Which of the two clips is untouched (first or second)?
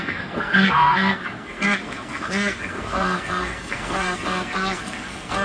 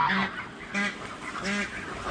second